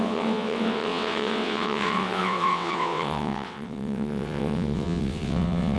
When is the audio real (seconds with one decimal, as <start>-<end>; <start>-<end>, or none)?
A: none